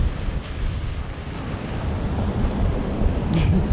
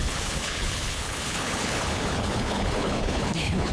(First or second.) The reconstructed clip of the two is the second